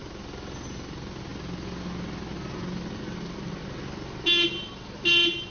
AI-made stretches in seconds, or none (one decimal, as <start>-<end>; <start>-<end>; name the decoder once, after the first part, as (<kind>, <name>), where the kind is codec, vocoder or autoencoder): none